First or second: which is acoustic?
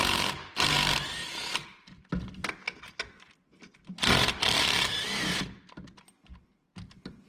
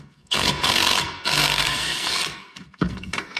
first